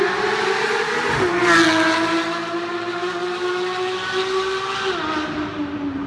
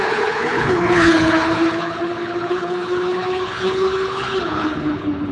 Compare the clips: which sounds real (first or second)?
first